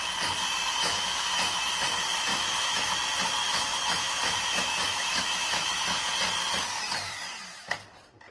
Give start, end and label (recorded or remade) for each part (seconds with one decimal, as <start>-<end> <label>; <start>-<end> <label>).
0.0-0.8 recorded; 0.8-1.6 remade; 1.6-2.3 recorded; 2.3-2.9 remade; 2.9-3.4 recorded; 3.4-6.1 remade; 6.1-8.3 recorded